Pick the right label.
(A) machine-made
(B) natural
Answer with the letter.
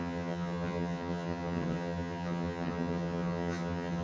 A